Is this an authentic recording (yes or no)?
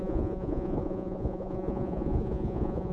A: no